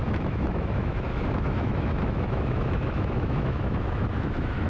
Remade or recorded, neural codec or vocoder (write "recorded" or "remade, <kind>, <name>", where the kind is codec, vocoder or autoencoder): remade, autoencoder, DAC-VAE